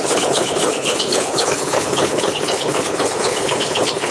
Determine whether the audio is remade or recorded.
remade